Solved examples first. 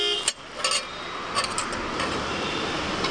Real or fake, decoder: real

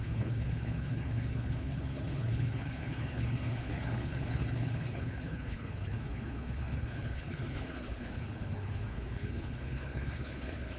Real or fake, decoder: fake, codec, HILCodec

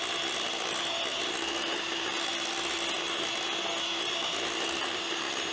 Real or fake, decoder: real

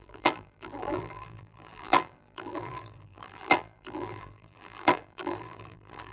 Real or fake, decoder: fake, vocoder, BigVGAN v2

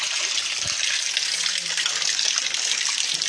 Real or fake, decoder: real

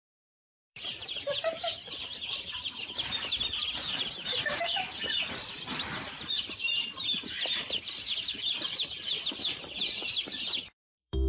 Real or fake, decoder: fake, vocoder, BigVGAN v2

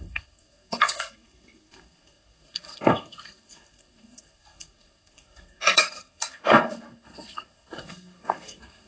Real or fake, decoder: fake, codec, SNAC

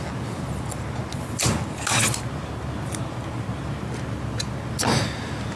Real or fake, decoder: real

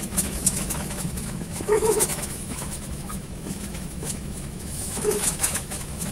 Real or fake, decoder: fake, autoencoder, DAC-VAE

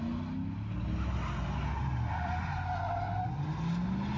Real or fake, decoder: real